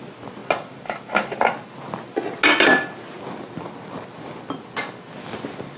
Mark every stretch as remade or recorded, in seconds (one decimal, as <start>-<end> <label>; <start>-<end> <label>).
0.0-5.8 recorded